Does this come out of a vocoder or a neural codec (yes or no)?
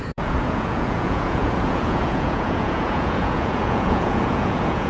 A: yes